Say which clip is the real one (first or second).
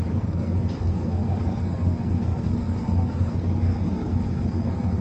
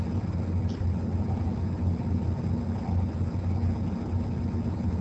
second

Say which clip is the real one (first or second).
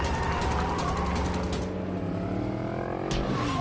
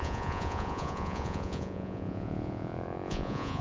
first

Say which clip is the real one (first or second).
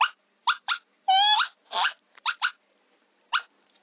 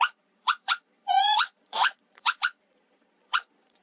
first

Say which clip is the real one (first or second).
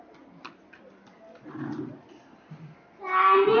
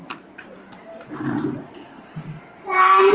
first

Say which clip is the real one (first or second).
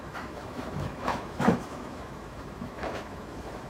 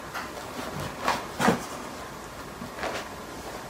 second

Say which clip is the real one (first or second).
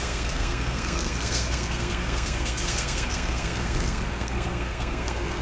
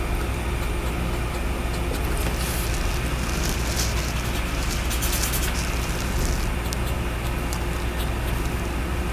second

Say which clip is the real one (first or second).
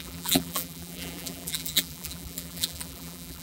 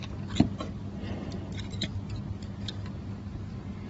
second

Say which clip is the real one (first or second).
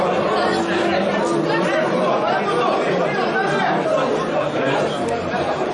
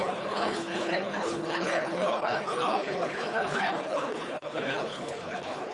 first